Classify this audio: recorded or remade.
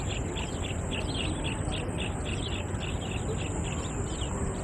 recorded